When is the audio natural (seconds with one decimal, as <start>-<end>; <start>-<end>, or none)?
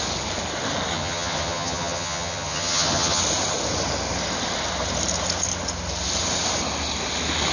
0.0-0.9; 3.2-7.5